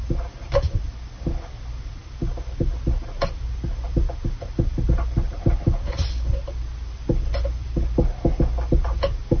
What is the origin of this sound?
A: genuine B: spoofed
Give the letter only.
A